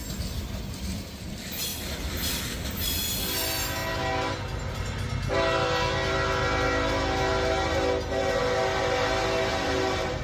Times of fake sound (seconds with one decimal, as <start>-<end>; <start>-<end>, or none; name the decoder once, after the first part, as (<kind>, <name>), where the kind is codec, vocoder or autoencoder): 1.7-2.4 (vocoder, BigVGAN v2); 9.5-10.2